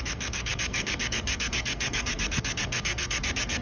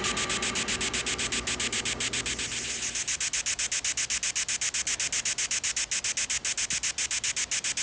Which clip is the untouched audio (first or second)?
second